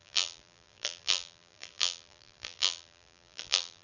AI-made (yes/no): yes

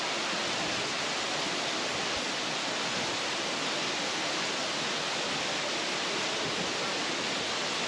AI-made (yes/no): no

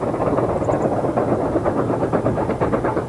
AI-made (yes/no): no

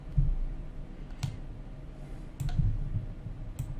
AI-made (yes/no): no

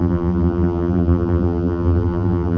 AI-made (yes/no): yes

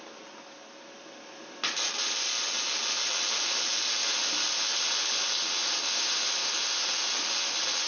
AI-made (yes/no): no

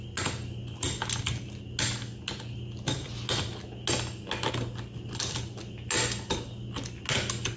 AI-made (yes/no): no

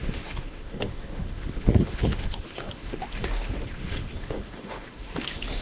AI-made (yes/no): yes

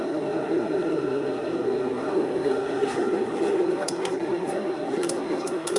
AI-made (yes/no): yes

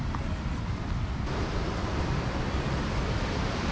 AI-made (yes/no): no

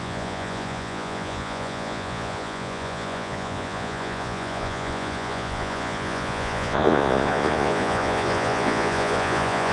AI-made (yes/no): yes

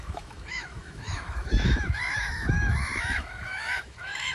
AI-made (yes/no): yes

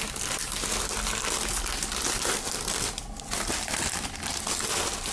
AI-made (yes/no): no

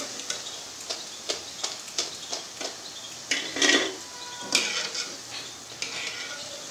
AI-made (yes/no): no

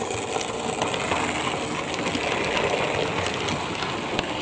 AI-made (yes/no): no